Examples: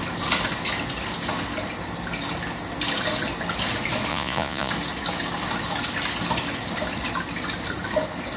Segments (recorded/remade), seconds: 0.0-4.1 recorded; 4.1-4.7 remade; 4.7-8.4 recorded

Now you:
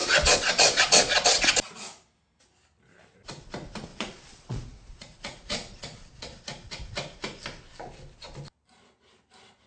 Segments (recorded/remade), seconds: 0.0-1.5 remade; 1.5-3.9 recorded; 3.9-6.7 remade; 6.7-9.7 recorded